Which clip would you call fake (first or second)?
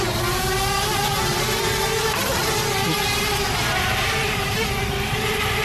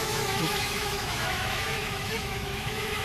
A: second